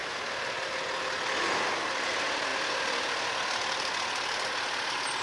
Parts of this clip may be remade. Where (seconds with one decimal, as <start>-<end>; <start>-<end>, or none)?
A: none